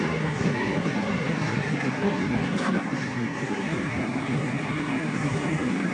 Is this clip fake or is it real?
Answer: fake